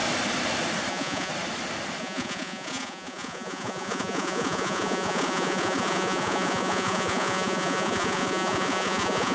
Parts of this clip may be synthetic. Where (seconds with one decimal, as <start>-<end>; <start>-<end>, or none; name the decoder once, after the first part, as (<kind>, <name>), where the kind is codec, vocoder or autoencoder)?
0.9-1.3 (vocoder, Vocos); 2.0-9.3